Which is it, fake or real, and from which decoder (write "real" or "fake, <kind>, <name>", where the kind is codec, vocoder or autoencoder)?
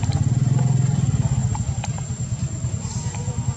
real